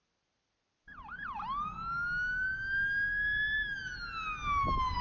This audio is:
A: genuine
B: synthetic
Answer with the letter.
A